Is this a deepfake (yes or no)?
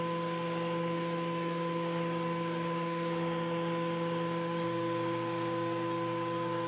yes